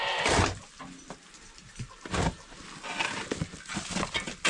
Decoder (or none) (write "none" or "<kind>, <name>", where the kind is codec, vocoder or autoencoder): none